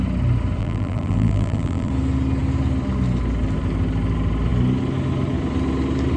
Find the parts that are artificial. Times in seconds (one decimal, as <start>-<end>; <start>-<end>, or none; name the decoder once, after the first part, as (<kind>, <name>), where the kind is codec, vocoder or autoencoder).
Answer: 0.6-1.9 (vocoder, BigVGAN v2)